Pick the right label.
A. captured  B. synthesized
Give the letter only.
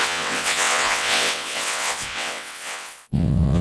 B